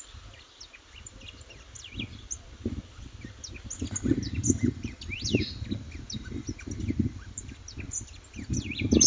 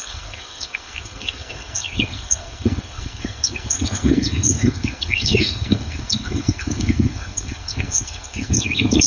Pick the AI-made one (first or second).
second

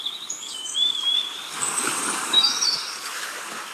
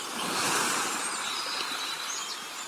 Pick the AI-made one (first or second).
first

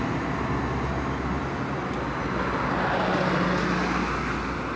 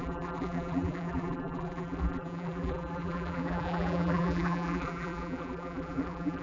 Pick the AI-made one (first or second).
second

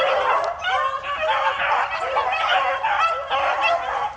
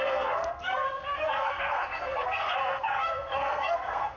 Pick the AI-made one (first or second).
second